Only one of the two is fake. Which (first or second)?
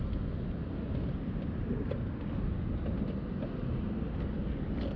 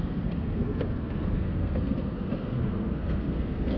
second